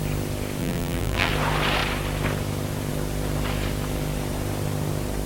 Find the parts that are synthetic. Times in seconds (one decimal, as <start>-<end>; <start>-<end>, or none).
0.6-1.3